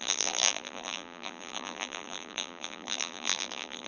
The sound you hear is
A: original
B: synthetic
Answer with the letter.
B